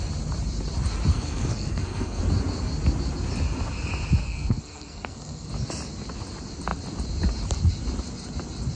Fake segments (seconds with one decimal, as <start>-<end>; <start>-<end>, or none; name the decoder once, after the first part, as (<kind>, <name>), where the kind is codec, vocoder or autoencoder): 1.1-2.2 (codec, SNAC); 4.2-5.5